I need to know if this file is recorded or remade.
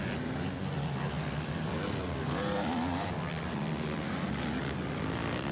recorded